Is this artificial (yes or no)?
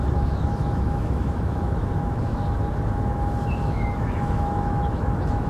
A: yes